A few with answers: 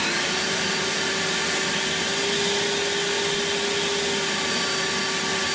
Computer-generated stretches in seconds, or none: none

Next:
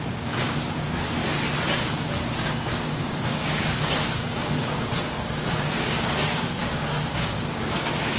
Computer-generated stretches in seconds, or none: 0.0-1.2 (codec, DAC); 1.7-8.2

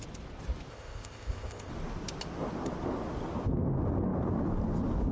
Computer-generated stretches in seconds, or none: 0.7-1.7 (codec, ZipCodec)

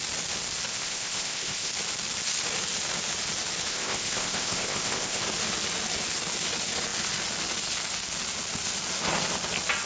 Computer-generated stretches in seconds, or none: 0.7-1.7 (codec, ZipCodec); 3.7-5.2

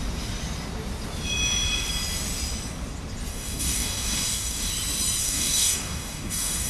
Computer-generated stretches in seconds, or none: 3.3-4.7 (codec, DAC); 5.2-6.7

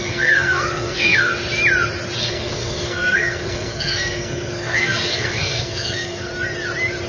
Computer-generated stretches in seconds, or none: 0.0-1.3 (codec, SNAC); 2.2-6.3

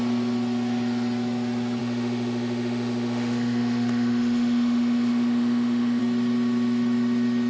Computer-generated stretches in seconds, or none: 1.8-6.0 (autoencoder, DAC-VAE)

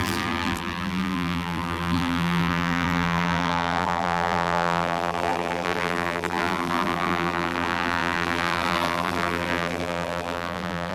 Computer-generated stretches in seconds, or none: 0.0-10.9 (vocoder, BigVGAN v2)